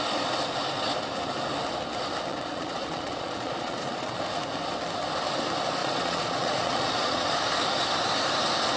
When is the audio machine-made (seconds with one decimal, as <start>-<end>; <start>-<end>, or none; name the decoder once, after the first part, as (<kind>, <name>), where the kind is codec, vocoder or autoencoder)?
2.3-4.2 (vocoder, Vocos); 5.8-7.3